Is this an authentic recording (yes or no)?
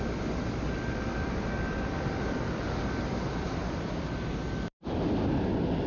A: yes